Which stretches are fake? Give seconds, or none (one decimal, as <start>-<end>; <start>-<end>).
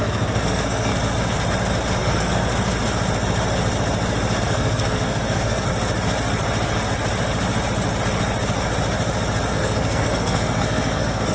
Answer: 0.0-0.9; 2.0-2.5; 4.4-5.7; 9.5-11.3